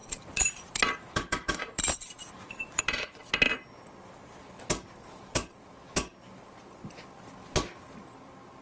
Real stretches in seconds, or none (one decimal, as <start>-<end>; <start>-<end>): 2.8-8.6